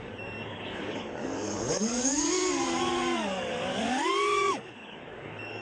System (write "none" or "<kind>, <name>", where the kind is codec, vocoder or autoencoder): codec, DAC